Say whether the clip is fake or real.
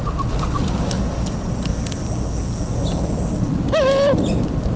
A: real